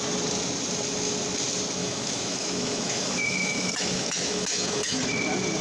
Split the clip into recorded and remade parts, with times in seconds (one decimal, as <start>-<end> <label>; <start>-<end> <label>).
0.0-1.8 recorded; 1.8-5.0 remade; 5.0-5.6 recorded